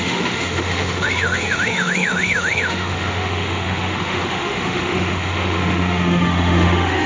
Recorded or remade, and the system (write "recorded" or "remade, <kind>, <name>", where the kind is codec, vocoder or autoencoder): remade, autoencoder, DAC-VAE